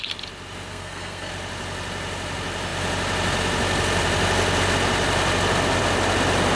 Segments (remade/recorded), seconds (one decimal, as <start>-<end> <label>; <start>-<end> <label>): 0.0-0.7 recorded; 0.7-1.3 remade; 1.3-6.6 recorded

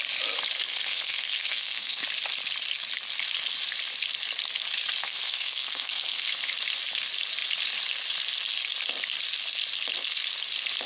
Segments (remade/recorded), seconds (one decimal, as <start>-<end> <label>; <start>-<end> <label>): 0.0-0.7 recorded; 0.7-2.0 remade; 2.0-5.0 recorded; 5.0-6.4 remade; 6.4-10.9 recorded

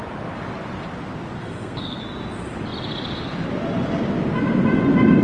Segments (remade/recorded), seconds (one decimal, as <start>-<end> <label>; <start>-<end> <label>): 0.0-1.4 recorded; 1.4-2.0 remade; 2.0-5.2 recorded

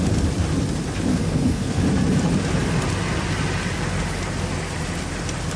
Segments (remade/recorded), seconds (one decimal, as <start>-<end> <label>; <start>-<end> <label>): 0.0-1.1 recorded; 1.1-1.8 remade; 1.8-5.6 recorded

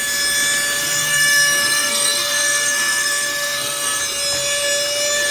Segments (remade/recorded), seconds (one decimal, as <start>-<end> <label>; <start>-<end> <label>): 0.0-0.8 recorded; 0.8-4.0 remade; 4.0-5.3 recorded

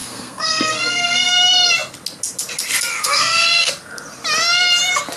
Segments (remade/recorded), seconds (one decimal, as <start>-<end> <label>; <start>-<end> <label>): 0.0-1.3 remade; 1.3-2.9 recorded; 2.9-3.7 remade; 3.7-5.2 recorded